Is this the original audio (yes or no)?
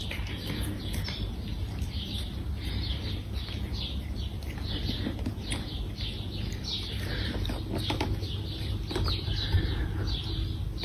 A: yes